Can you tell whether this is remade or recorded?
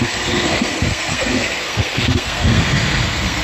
remade